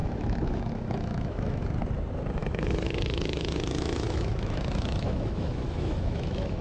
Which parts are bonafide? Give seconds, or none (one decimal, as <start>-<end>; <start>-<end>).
1.6-2.4